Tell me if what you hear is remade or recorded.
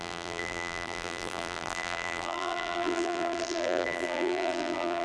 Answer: remade